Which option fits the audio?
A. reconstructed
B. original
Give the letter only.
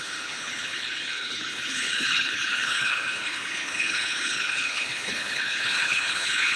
A